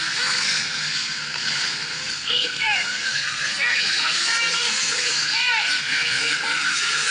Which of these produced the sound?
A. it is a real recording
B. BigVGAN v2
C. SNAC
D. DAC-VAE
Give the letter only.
C